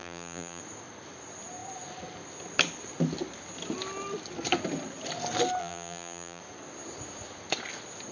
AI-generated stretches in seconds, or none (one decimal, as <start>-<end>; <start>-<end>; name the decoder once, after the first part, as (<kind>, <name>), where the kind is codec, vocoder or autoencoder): 0.0-0.6 (vocoder, BigVGAN v2); 5.6-6.4